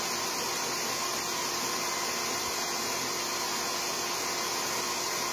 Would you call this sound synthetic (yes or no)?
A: no